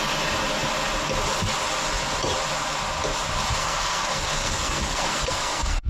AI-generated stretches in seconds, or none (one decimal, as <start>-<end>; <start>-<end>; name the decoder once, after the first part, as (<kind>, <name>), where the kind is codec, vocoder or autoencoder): 3.6-5.9 (codec, SNAC)